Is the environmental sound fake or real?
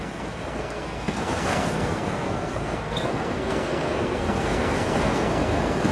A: fake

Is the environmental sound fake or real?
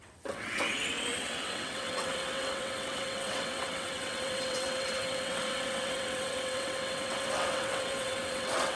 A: fake